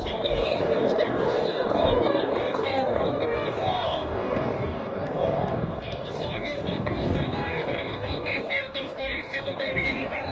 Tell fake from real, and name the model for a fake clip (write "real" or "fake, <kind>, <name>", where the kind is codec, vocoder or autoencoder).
fake, codec, DAC